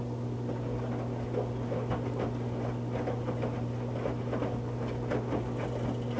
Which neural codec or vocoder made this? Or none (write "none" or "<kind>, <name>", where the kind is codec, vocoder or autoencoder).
none